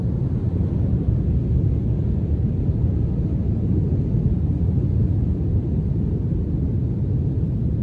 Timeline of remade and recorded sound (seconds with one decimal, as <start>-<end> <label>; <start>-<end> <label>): 0.0-5.1 recorded; 5.1-6.1 remade; 6.1-7.8 recorded